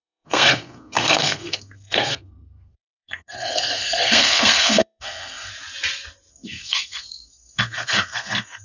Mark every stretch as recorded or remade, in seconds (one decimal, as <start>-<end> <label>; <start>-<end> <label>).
0.0-5.5 remade; 5.5-6.3 recorded; 6.3-8.6 remade